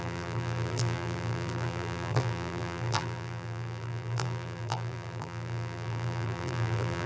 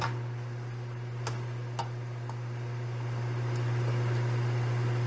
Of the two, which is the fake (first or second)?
first